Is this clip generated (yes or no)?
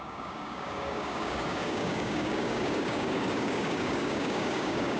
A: yes